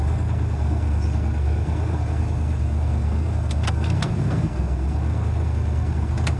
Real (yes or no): no